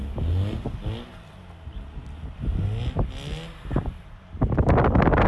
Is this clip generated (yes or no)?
no